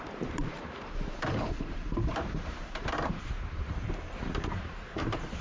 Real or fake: fake